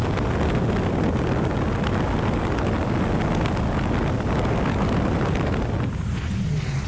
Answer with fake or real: real